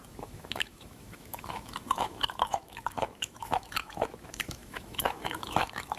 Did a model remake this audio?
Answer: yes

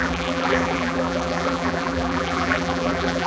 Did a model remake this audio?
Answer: yes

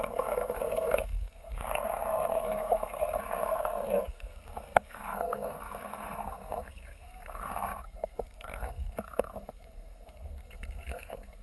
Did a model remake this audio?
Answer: yes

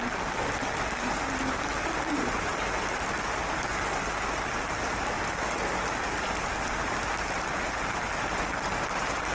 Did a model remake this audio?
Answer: no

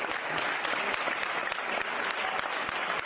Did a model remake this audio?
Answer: yes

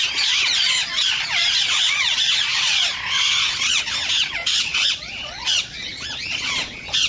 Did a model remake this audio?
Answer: yes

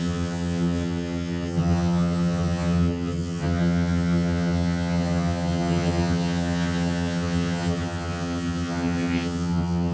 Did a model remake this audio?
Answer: yes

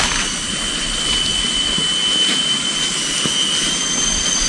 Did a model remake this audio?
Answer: no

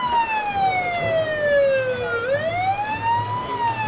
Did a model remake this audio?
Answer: no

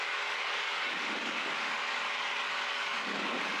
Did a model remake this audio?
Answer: yes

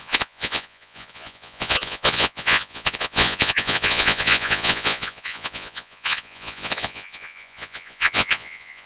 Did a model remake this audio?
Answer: yes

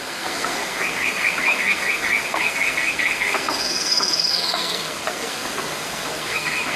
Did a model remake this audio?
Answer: yes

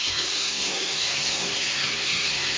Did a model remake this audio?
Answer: yes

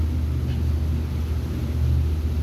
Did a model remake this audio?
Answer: no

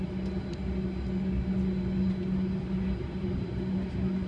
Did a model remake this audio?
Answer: no